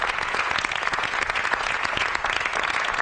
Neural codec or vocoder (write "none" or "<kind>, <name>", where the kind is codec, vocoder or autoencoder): vocoder, Vocos